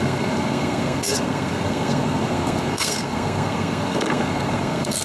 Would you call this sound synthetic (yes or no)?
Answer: yes